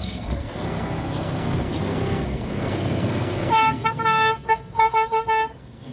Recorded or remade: remade